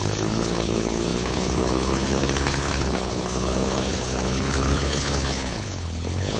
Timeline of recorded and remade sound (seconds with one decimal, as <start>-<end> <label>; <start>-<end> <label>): 0.0-6.4 remade